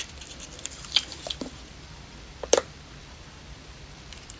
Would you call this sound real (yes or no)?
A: no